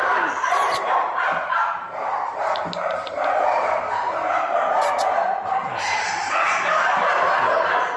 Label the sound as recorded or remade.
remade